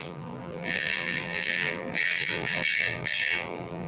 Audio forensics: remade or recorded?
remade